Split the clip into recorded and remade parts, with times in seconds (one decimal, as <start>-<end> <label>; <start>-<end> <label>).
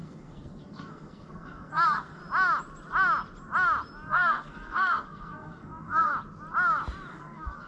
0.0-2.2 remade; 2.2-4.1 recorded; 4.1-6.1 remade; 6.1-7.1 recorded; 7.1-7.7 remade